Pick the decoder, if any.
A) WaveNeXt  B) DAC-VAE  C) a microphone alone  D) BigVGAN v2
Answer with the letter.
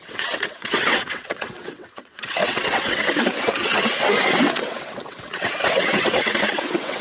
A